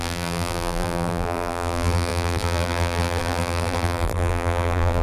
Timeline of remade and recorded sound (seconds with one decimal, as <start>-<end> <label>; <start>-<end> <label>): 0.0-5.0 remade